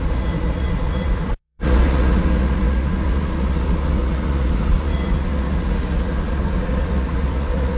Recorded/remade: remade